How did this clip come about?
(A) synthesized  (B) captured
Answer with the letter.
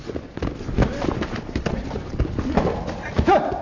B